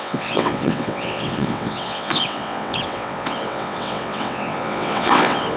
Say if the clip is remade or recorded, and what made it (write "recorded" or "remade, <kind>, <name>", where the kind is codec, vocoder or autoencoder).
remade, vocoder, WaveNeXt